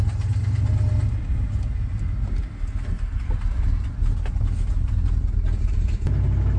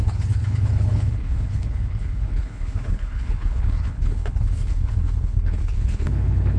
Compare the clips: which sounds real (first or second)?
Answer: first